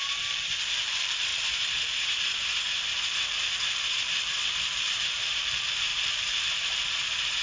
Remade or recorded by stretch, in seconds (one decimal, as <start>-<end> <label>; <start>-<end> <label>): 0.0-1.3 remade; 1.3-4.9 recorded; 4.9-7.4 remade